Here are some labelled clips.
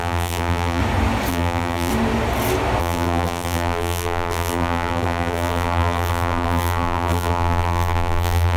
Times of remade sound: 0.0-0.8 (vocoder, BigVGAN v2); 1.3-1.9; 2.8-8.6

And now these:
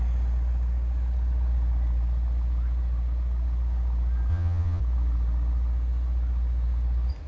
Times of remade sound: 4.3-4.8 (vocoder, Vocos)

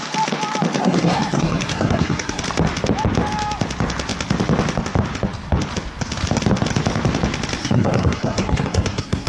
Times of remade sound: 0.8-2.4 (codec, SNAC); 7.6-9.3

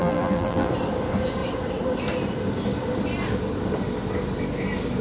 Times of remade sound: 0.0-0.7 (vocoder, BigVGAN v2)

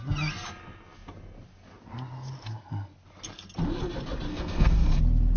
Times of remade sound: 4.3-5.0 (codec, SNAC)

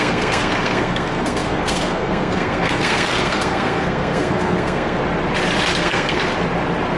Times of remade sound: 0.0-5.0 (codec, SNAC); 5.8-6.3

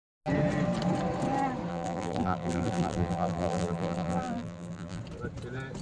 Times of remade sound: 1.7-5.0 (vocoder, BigVGAN v2)